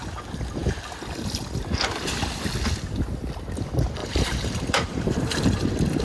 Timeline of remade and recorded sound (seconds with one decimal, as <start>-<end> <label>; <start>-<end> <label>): 0.0-4.0 recorded; 4.0-5.4 remade; 5.4-6.0 recorded